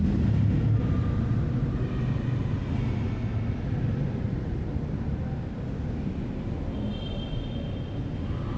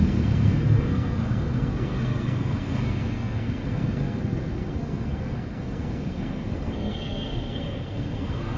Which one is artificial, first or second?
second